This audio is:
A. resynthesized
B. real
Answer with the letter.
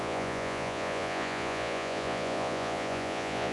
A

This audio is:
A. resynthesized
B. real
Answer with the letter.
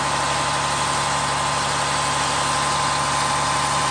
B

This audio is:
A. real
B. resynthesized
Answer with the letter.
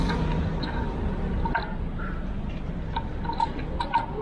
A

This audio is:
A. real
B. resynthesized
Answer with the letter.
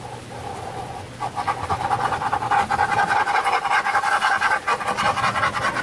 A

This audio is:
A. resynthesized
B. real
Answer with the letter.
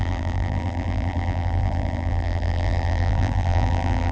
A